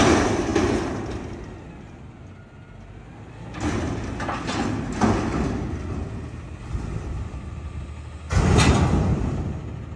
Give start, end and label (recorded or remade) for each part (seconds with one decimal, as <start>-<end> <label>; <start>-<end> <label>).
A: 0.0-10.0 recorded